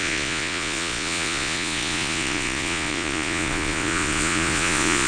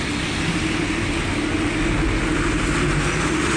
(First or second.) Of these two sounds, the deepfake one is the first